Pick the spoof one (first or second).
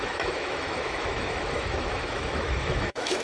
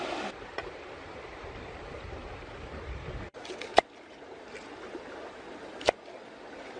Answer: first